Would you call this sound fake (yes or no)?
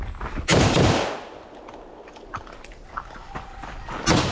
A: no